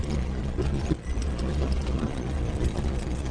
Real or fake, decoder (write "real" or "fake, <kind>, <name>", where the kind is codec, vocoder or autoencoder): fake, vocoder, Vocos